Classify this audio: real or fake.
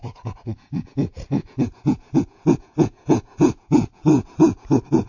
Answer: fake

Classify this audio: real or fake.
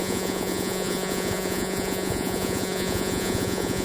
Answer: fake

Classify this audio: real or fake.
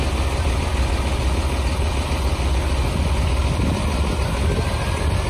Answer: real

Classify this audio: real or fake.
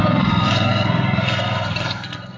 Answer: fake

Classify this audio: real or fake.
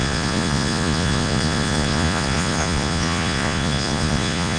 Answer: fake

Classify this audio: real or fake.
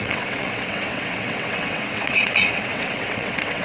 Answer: fake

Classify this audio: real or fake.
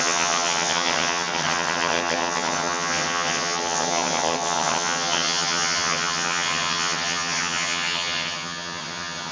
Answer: fake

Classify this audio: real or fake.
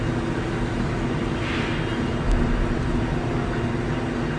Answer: real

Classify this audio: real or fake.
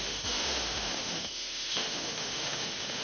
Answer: fake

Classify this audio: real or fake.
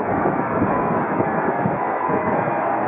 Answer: fake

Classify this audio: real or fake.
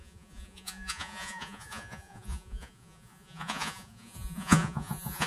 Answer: fake